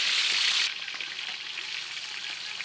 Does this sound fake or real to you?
real